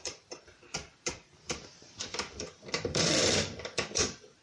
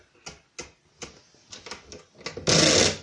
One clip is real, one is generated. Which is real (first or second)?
second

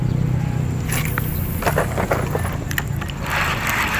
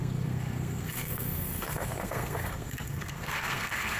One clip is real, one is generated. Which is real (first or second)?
first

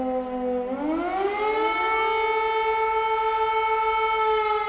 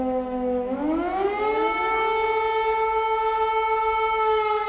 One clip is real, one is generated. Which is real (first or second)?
first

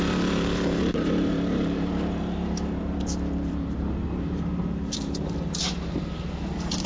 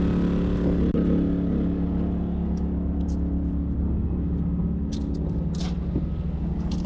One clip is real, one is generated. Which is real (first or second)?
second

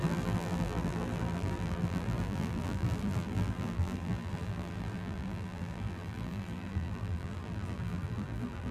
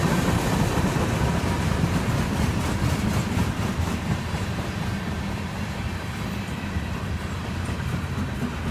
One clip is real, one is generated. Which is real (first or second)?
second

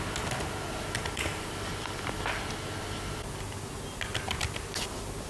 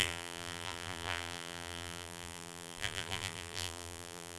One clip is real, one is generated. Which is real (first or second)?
first